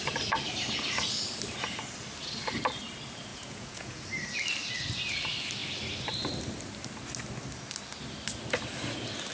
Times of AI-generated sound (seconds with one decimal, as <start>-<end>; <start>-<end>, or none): 3.3-4.0

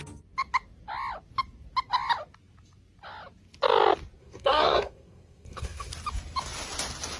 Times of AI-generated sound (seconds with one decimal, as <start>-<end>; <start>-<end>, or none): 4.2-5.9